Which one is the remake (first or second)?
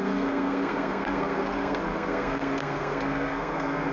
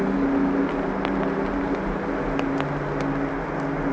first